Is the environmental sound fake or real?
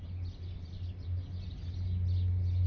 real